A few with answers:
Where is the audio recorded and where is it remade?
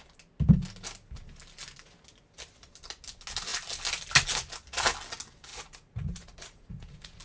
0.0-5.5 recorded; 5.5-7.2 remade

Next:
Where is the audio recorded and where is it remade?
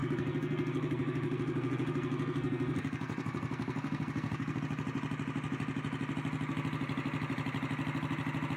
0.0-4.6 remade; 4.6-8.6 recorded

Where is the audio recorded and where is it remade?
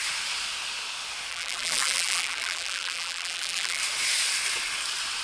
0.0-1.3 recorded; 1.3-3.8 remade; 3.8-5.2 recorded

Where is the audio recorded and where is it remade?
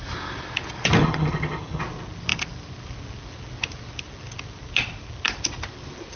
0.0-1.0 recorded; 1.0-1.8 remade; 1.8-6.2 recorded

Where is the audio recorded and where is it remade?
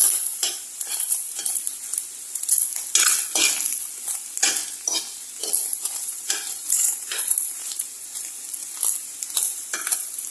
0.0-1.4 remade; 1.4-5.7 recorded; 5.7-8.4 remade; 8.4-10.3 recorded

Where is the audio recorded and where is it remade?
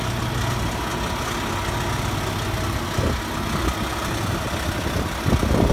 0.0-5.7 recorded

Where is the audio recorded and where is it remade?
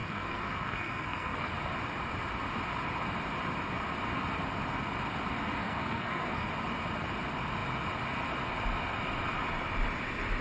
0.0-1.5 remade; 1.5-5.6 recorded; 5.6-6.5 remade; 6.5-10.4 recorded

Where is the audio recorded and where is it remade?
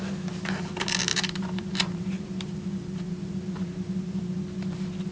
0.0-1.1 recorded; 1.1-4.2 remade; 4.2-5.1 recorded